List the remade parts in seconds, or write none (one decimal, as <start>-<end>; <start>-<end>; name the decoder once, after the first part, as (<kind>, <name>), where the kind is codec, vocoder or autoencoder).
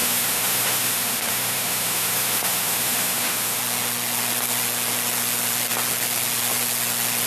0.0-3.6 (autoencoder, DAC-VAE)